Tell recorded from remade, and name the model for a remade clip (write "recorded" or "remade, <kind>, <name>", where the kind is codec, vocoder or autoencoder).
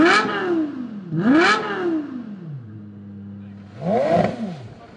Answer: recorded